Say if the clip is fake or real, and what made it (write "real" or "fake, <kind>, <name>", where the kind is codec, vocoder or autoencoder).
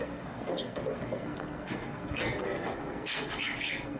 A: fake, codec, SNAC